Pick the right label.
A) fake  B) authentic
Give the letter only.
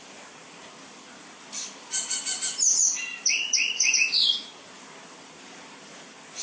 A